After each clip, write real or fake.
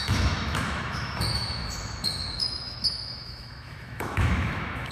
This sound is fake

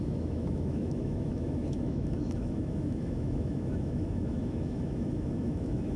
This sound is fake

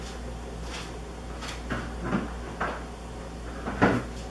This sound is real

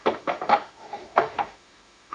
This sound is fake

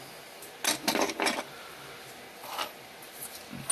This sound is real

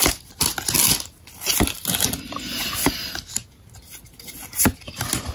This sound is real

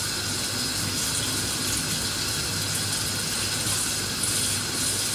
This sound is real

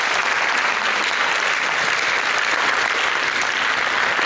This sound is real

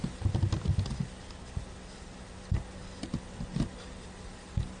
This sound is real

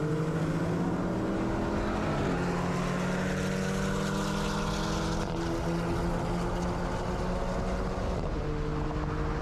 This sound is real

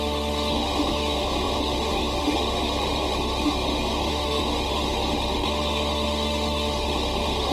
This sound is fake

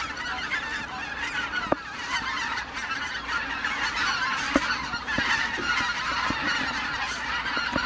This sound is real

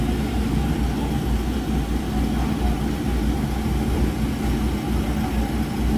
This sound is real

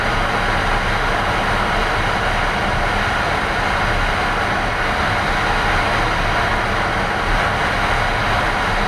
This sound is real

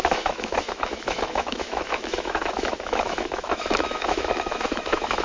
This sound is fake